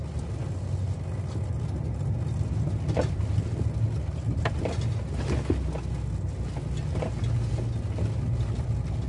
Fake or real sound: real